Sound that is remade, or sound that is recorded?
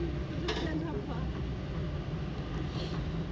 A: recorded